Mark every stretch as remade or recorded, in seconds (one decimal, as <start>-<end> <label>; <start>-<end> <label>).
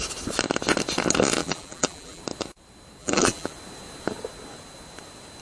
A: 0.0-1.4 recorded; 1.4-2.2 remade; 2.2-3.0 recorded; 3.0-3.5 remade; 3.5-5.4 recorded